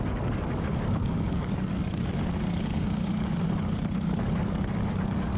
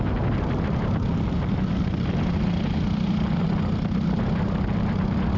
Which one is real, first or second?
second